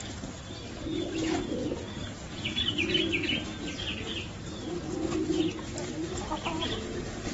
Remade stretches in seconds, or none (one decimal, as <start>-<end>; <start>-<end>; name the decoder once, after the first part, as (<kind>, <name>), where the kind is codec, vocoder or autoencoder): 2.0-2.6 (vocoder, Vocos)